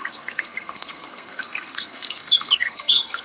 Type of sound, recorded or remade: remade